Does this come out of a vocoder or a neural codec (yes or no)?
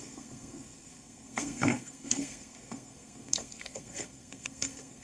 yes